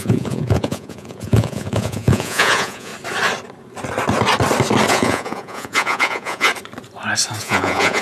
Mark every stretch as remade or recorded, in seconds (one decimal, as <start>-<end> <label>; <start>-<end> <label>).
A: 0.0-2.9 remade; 2.9-4.9 recorded; 4.9-6.5 remade; 6.5-7.4 recorded; 7.4-8.0 remade